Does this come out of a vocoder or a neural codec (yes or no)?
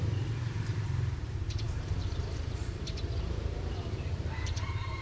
yes